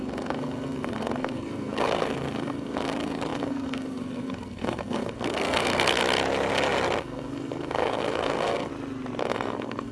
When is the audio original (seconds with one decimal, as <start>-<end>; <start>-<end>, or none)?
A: 6.0-7.0; 8.7-9.2